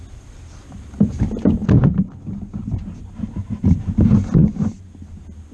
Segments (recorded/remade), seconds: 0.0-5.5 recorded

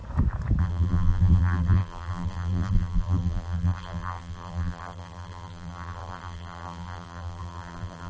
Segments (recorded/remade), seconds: 0.0-0.6 recorded; 0.6-8.1 remade

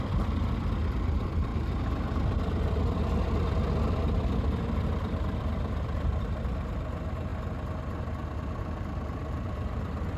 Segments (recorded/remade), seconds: 0.0-1.5 remade; 1.5-3.9 recorded; 3.9-7.3 remade; 7.3-8.6 recorded; 8.6-10.2 remade

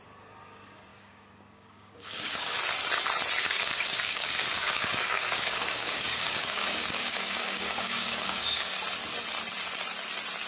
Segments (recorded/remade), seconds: 0.0-0.9 recorded; 0.9-2.6 remade; 2.6-3.4 recorded; 3.4-8.7 remade; 8.7-10.5 recorded

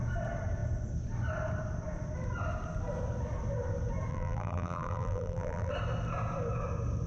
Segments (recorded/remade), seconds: 0.0-4.1 recorded; 4.1-5.7 remade; 5.7-7.1 recorded

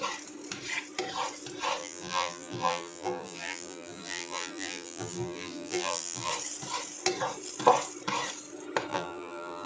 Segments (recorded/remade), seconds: 0.0-1.8 recorded; 1.8-6.3 remade; 6.3-8.9 recorded; 8.9-9.7 remade

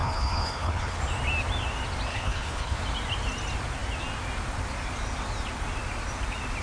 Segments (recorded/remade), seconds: 0.0-1.0 remade; 1.0-2.1 recorded; 2.1-2.8 remade; 2.8-6.6 recorded